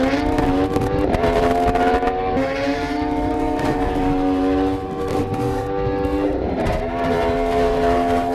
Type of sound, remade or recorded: remade